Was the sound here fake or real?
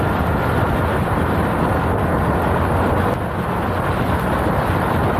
real